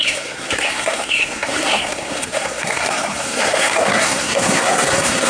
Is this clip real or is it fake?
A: fake